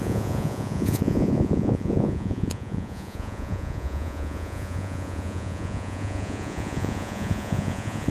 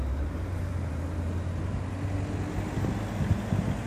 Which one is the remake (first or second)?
first